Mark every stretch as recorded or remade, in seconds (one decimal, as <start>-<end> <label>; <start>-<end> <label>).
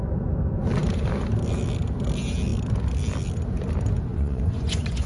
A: 0.0-4.1 recorded; 4.1-5.1 remade